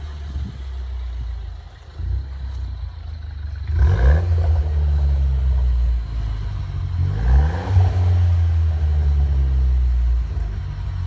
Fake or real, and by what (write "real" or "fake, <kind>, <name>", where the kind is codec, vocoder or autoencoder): real